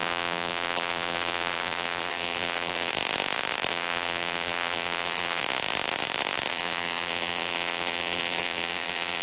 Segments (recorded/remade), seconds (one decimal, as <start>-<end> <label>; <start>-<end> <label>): 0.0-2.9 remade; 2.9-3.7 recorded; 3.7-5.4 remade; 5.4-6.5 recorded; 6.5-9.2 remade